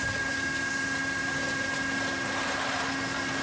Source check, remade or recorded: recorded